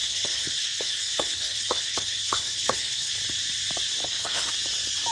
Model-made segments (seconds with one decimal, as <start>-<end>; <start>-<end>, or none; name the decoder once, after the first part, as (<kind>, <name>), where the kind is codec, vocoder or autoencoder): 0.0-3.1 (codec, HILCodec); 4.0-4.5